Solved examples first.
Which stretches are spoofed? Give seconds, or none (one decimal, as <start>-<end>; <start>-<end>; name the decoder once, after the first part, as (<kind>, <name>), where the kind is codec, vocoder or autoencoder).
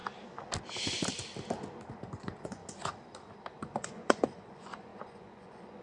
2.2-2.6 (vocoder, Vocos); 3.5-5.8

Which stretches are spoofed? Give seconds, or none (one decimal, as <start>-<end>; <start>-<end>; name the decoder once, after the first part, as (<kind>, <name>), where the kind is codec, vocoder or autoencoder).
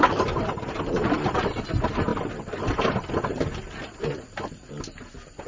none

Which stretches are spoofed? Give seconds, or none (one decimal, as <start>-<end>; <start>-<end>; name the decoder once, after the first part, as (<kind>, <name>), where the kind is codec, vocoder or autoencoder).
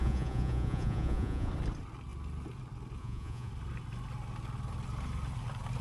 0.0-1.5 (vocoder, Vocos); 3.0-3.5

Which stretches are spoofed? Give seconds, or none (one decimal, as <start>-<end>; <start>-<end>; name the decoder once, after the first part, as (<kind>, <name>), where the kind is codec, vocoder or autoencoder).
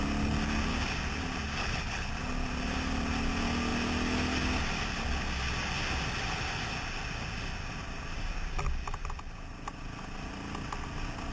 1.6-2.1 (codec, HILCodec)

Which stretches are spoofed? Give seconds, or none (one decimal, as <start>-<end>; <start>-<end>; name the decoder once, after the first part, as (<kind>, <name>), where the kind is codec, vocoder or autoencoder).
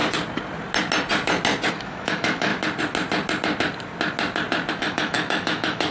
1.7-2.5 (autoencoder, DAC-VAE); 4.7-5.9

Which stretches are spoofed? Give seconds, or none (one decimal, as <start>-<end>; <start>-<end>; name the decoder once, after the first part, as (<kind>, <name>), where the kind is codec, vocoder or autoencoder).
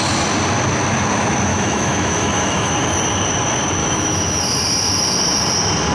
1.5-2.7 (autoencoder, DAC-VAE); 3.8-4.4